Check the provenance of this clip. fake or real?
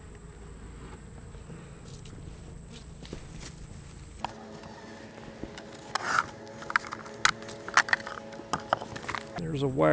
real